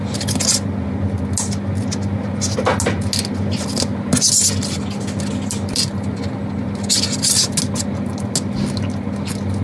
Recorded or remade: recorded